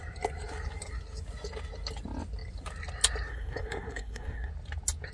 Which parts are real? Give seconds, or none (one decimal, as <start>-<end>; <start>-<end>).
0.0-3.3; 4.5-5.1

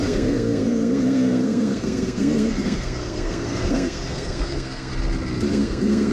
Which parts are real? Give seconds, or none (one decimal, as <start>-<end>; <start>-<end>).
4.9-5.5

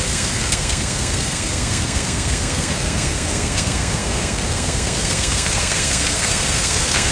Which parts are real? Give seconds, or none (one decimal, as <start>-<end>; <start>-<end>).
none

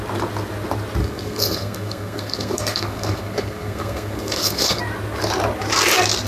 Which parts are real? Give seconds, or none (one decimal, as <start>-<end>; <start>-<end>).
0.0-1.0; 4.8-6.3

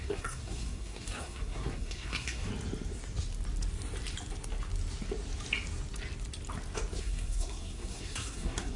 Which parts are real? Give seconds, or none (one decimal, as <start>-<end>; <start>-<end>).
2.5-7.0

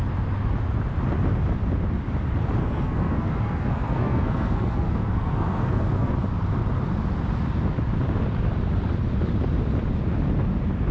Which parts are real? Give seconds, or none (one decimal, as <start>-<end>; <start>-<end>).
0.0-2.6; 6.1-10.9

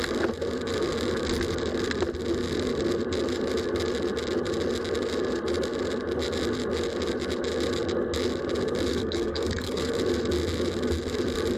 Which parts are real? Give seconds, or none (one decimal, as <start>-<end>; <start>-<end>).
0.0-8.9; 9.9-11.6

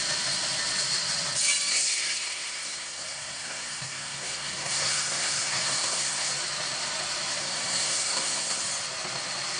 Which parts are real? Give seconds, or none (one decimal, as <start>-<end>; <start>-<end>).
0.0-1.7; 6.3-7.4; 8.6-9.6